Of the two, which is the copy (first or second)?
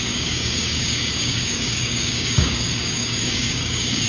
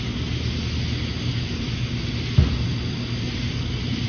first